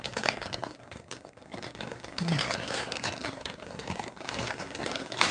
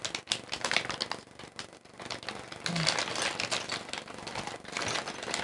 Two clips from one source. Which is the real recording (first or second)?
second